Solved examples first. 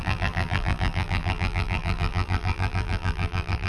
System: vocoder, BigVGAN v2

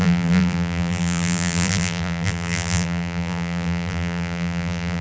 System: vocoder, BigVGAN v2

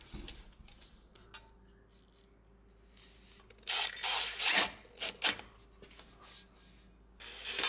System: none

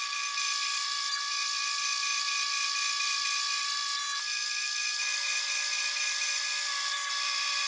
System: vocoder, BigVGAN v2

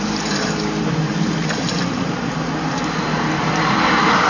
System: vocoder, BigVGAN v2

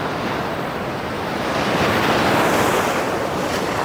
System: none